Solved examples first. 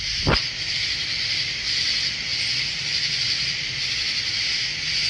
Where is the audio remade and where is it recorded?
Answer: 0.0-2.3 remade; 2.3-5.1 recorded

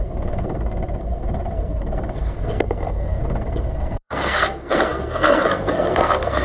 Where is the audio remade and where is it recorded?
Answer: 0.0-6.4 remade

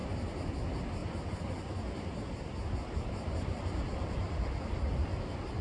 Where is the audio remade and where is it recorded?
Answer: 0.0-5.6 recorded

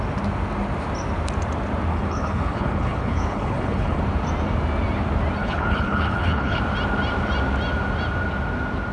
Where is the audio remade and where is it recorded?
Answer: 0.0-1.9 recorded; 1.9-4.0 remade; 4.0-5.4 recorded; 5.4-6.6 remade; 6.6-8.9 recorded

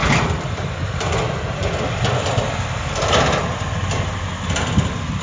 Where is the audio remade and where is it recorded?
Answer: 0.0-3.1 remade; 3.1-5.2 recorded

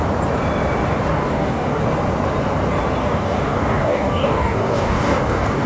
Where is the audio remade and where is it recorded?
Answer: 0.0-1.1 recorded; 1.1-1.8 remade; 1.8-3.0 recorded; 3.0-5.7 remade

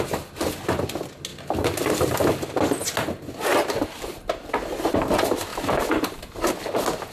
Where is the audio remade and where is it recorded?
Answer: 0.0-3.5 recorded; 3.5-4.6 remade; 4.6-5.5 recorded; 5.5-6.3 remade; 6.3-7.1 recorded

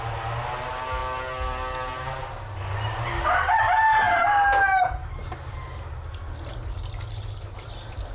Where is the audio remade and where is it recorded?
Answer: 0.0-8.1 recorded